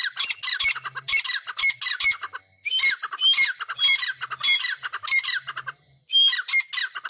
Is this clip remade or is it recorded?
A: recorded